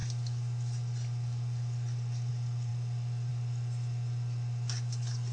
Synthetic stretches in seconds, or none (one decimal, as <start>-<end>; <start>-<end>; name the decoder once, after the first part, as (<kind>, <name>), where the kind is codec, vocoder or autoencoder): none